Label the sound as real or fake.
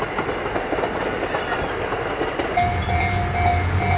real